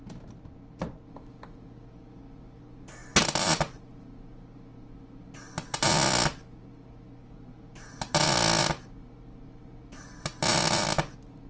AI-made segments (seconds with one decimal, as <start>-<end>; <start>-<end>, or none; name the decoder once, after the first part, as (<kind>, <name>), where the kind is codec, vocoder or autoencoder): none